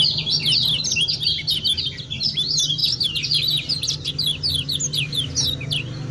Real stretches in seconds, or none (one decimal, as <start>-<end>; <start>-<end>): 0.0-6.1